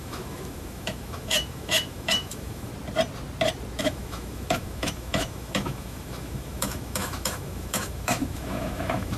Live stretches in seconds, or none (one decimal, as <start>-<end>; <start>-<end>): 2.7-3.8